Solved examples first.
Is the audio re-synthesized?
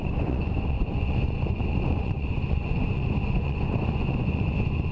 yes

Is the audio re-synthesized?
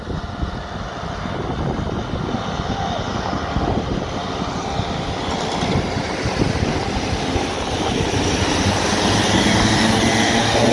no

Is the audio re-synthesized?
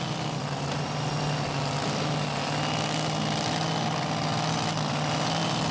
no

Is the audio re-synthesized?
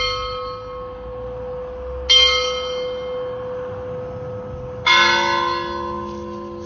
no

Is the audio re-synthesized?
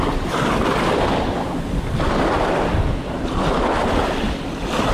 no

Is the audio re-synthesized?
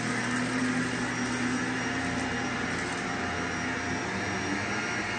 no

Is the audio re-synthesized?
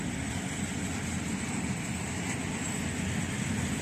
no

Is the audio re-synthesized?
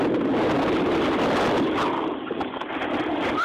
no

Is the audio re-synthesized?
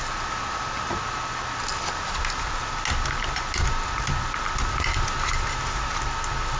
no